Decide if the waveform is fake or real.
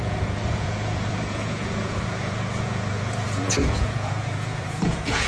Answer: fake